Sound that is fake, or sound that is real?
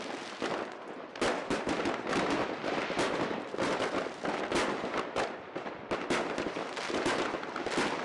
real